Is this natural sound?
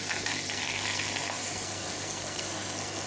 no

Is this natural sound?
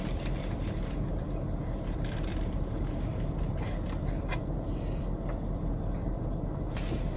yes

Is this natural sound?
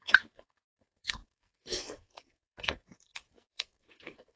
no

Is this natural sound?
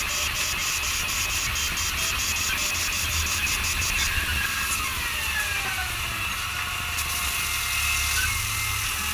yes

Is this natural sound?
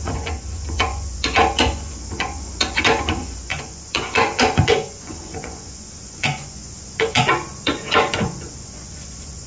no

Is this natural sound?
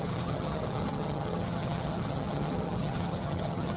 no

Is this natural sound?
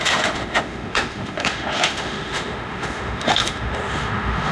no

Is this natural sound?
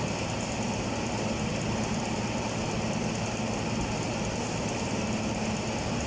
yes